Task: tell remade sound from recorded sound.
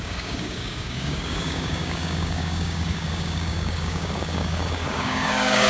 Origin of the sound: remade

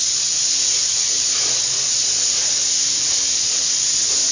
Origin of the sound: recorded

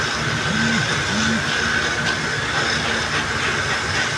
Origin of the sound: recorded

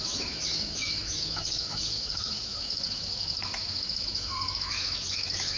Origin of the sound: remade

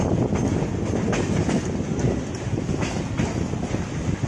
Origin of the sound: recorded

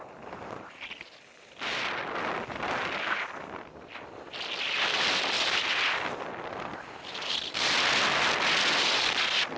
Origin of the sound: recorded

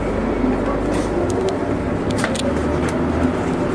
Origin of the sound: recorded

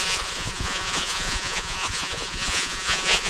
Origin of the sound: remade